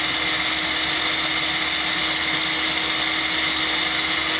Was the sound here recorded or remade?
recorded